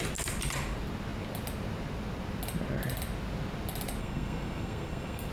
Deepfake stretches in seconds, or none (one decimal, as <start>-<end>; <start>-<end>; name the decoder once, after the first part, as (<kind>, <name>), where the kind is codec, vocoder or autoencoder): 4.0-5.3 (codec, SNAC)